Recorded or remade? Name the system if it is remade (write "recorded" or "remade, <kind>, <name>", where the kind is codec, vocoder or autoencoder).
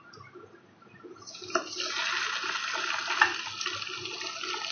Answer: recorded